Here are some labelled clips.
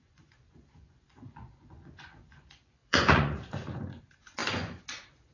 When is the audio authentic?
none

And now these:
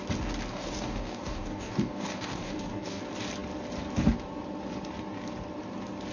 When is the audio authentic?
0.0-0.5; 3.0-6.1

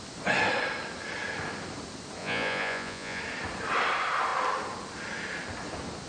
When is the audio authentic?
0.0-2.2; 3.2-6.1

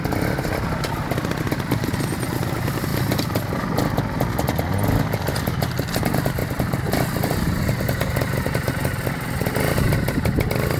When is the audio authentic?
0.0-10.8

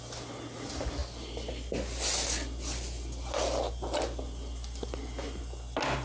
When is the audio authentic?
0.0-6.0

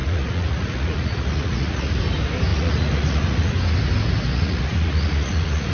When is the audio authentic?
2.0-2.5; 3.5-4.3

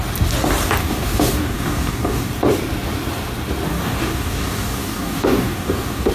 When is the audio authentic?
0.0-0.8; 2.3-3.7